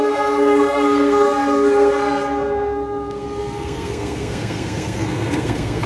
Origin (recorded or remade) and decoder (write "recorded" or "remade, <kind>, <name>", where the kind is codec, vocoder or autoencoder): remade, codec, SNAC